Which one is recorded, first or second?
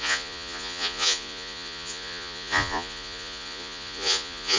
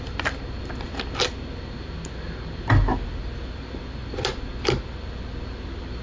second